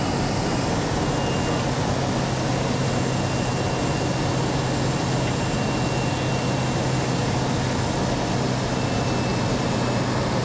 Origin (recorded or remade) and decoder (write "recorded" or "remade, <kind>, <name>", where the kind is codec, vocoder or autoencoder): recorded